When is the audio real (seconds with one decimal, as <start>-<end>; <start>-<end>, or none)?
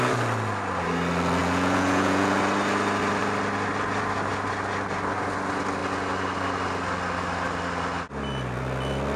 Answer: 0.0-1.4; 2.4-9.2